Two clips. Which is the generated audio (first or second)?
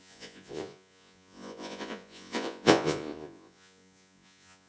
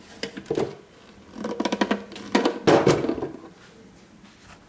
first